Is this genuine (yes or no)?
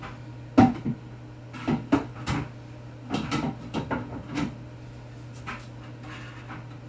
yes